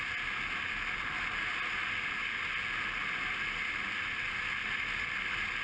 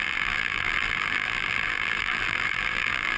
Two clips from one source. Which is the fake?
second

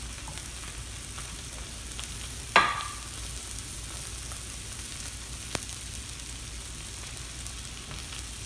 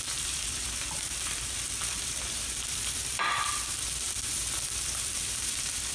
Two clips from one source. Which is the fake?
second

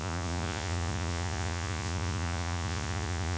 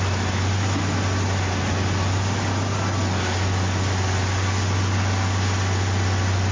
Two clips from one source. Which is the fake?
first